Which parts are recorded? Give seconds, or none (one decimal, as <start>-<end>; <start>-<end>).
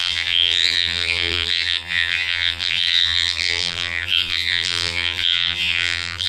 none